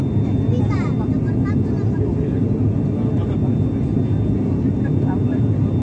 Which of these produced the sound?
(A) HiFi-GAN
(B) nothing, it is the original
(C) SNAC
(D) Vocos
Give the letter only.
B